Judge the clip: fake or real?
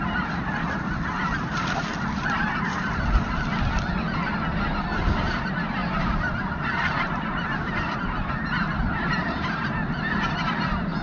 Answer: real